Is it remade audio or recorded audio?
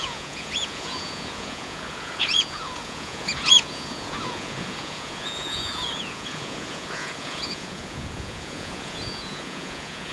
remade